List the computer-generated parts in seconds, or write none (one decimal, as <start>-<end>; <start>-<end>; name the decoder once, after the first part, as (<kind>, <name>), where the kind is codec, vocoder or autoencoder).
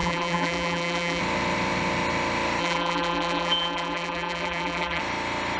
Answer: 0.0-1.2 (vocoder, BigVGAN v2); 2.6-5.0